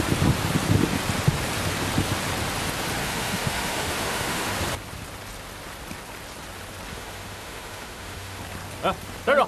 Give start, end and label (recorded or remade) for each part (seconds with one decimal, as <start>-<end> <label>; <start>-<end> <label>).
0.0-3.0 recorded; 3.0-4.5 remade; 4.5-6.9 recorded; 6.9-8.4 remade; 8.4-9.5 recorded